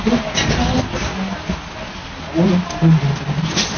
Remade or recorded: recorded